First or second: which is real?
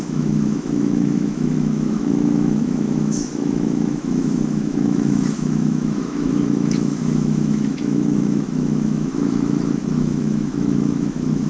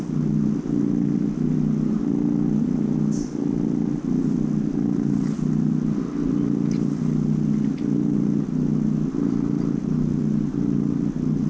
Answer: second